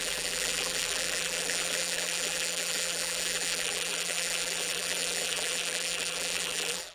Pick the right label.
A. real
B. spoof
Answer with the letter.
B